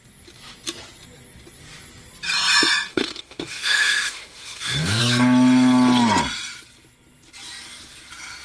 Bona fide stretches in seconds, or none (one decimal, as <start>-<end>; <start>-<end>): 0.0-2.9; 5.0-8.4